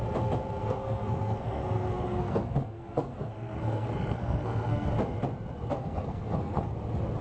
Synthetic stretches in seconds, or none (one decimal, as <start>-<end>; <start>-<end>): 0.6-4.9; 5.8-6.7